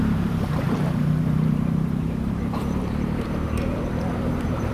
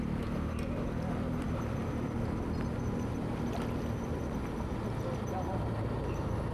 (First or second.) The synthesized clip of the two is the first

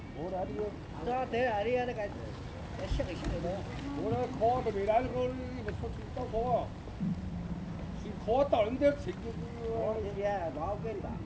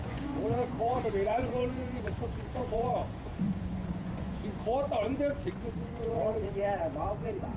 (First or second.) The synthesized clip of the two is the second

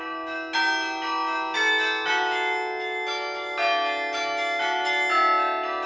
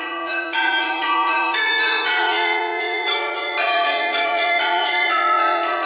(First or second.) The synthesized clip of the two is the second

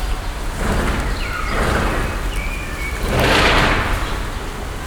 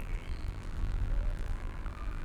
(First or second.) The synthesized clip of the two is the second